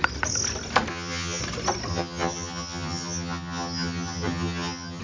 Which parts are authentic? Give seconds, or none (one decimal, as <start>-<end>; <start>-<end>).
0.0-0.9; 1.4-1.9